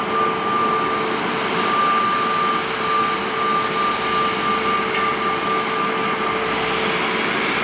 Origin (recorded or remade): recorded